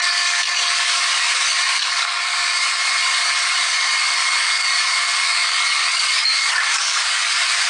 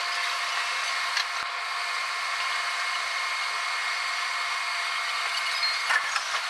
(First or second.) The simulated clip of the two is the first